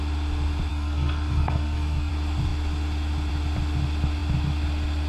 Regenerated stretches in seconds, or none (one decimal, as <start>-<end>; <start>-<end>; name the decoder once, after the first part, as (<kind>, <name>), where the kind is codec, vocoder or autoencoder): 0.7-2.1 (codec, SNAC)